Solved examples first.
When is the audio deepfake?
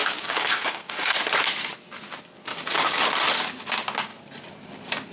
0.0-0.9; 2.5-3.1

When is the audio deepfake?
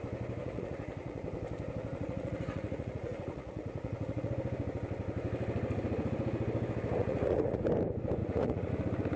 0.4-1.2; 1.9-4.3; 7.0-7.6; 8.2-8.7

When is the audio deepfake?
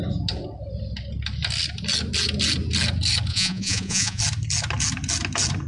3.3-4.2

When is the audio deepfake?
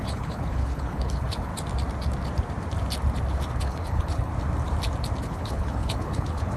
0.0-1.5; 3.6-4.3; 5.2-6.6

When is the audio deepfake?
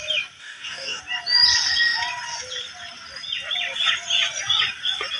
0.4-1.0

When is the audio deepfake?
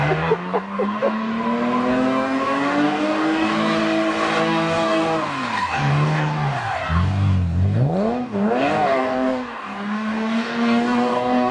0.0-1.3; 1.9-3.8; 4.4-11.5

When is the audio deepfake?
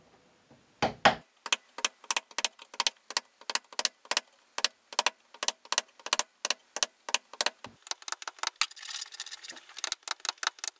none